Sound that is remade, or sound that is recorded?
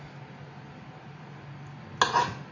recorded